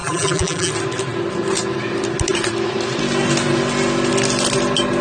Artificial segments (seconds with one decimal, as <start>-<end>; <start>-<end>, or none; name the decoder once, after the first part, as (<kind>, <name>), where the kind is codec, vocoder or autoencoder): 0.0-0.7 (vocoder, BigVGAN v2)